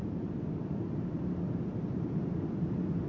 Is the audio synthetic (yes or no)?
no